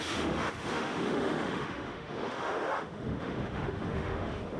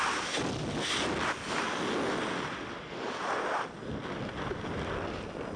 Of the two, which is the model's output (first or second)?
first